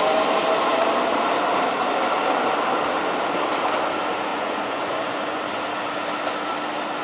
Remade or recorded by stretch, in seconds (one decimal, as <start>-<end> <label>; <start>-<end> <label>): 0.0-4.3 recorded; 4.3-5.6 remade; 5.6-7.0 recorded